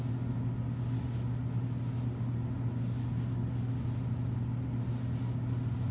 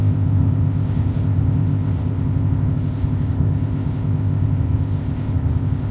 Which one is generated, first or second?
second